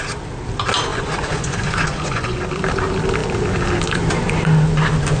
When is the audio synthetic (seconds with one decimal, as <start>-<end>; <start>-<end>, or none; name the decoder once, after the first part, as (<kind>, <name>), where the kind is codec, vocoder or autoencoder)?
0.9-2.4 (vocoder, Vocos)

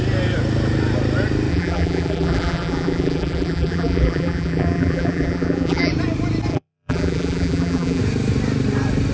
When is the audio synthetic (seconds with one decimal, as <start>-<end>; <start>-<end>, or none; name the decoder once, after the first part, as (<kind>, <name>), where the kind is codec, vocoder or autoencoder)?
1.5-5.9 (vocoder, BigVGAN v2); 6.5-8.0

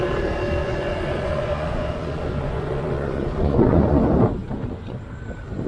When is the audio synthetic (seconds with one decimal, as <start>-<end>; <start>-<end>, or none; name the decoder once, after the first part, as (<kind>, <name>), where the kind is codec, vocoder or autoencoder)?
0.6-4.0 (vocoder, Vocos); 4.4-5.0

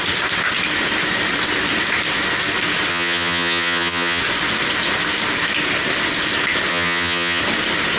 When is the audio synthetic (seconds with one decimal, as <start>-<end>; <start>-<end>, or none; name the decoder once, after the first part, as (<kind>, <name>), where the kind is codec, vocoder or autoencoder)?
2.9-4.2 (vocoder, HiFi-GAN); 6.7-7.4

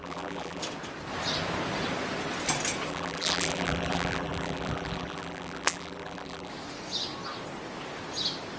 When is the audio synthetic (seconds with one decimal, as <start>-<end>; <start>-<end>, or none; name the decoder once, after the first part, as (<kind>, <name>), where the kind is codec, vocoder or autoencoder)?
0.0-0.6 (vocoder, BigVGAN v2); 2.9-6.5